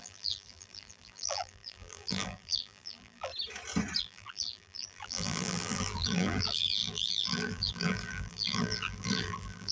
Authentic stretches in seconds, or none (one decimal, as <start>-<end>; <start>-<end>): 3.3-4.0